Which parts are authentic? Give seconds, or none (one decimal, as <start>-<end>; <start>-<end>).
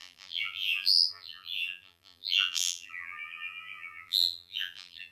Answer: none